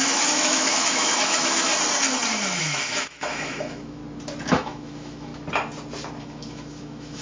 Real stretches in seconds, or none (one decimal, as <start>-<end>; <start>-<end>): 1.7-2.6; 4.0-4.5; 5.3-6.2

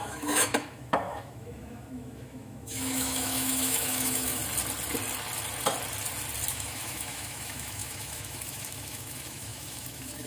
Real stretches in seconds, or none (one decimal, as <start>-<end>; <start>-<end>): 4.4-6.5

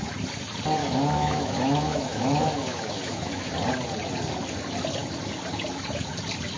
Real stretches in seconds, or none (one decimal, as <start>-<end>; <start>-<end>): 0.0-0.8; 3.5-6.6

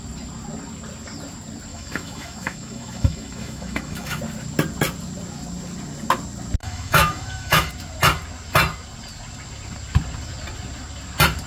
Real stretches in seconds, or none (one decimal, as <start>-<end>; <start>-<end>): 0.0-1.7; 4.2-6.6; 7.7-11.5

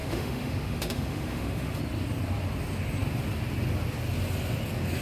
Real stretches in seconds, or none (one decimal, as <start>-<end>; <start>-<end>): 1.8-5.0